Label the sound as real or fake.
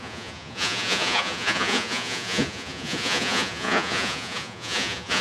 fake